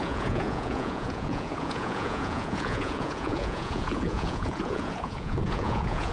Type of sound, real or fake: fake